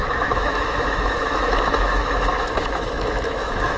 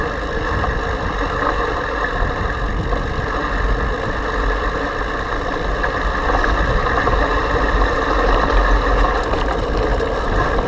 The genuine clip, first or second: second